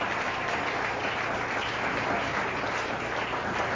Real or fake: real